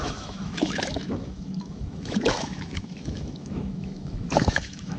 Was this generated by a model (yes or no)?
yes